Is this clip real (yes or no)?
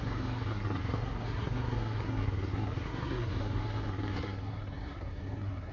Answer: no